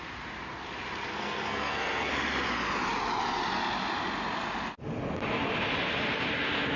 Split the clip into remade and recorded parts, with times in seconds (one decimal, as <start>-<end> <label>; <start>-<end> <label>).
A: 0.0-1.1 recorded; 1.1-2.1 remade; 2.1-6.8 recorded